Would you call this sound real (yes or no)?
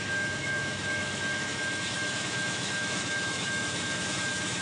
no